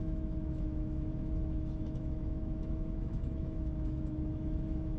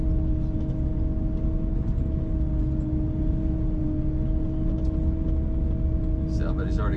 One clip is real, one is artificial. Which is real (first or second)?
second